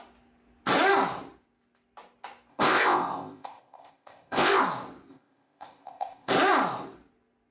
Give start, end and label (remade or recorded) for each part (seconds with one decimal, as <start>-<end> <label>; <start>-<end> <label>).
0.0-2.5 recorded; 2.5-4.6 remade; 4.6-5.1 recorded; 5.1-6.3 remade; 6.3-7.5 recorded